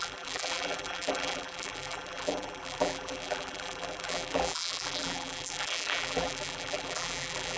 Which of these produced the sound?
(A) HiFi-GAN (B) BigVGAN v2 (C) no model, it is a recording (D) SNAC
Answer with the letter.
B